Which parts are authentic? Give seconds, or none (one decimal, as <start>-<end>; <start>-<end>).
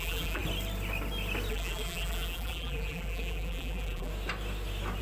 0.4-1.5; 4.1-5.0